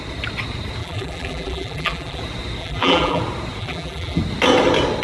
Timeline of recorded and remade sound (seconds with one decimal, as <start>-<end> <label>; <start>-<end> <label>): 0.0-0.8 recorded; 0.8-2.2 remade; 2.2-2.6 recorded; 2.6-3.2 remade; 3.2-3.6 recorded; 3.6-4.2 remade; 4.2-5.0 recorded